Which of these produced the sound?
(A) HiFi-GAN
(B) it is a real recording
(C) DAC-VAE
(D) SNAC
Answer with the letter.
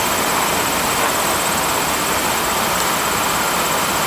B